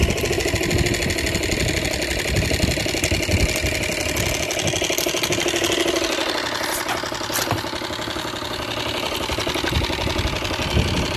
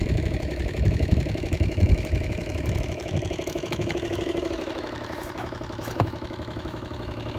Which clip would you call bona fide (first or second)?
first